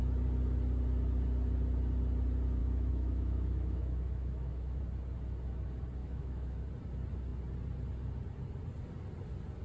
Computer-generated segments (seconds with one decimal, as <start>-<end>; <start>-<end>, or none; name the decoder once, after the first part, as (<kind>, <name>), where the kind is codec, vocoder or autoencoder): 2.6-4.8 (autoencoder, DAC-VAE); 6.0-6.6

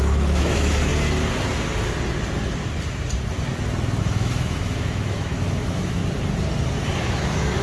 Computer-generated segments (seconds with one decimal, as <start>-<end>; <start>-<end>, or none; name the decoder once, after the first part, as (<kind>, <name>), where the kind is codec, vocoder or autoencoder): 0.0-0.9 (autoencoder, DAC-VAE); 4.0-6.0; 7.0-7.6

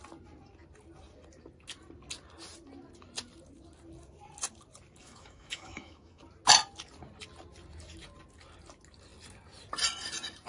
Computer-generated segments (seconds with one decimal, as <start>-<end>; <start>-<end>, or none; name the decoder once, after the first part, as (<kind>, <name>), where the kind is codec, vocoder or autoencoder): 5.0-6.2 (autoencoder, DAC-VAE)

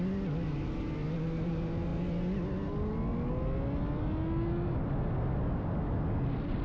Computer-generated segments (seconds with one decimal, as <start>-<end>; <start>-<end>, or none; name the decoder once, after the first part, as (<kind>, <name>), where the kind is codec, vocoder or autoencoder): none

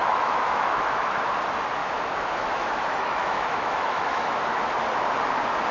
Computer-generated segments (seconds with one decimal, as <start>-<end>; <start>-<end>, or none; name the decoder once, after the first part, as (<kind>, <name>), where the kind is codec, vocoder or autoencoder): 0.0-1.3 (autoencoder, DAC-VAE); 1.8-4.4